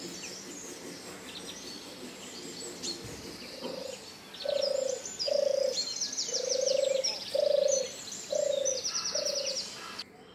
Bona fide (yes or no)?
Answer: yes